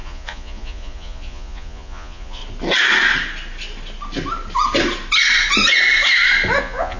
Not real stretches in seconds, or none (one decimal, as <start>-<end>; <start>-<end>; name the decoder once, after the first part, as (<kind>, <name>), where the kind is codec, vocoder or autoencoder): 0.0-2.4 (vocoder, Vocos); 6.6-7.0